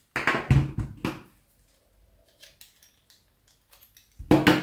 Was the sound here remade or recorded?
recorded